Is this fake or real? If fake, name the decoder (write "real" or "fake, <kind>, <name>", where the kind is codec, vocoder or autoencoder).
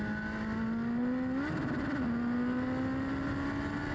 real